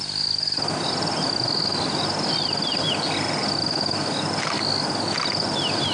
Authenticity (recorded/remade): recorded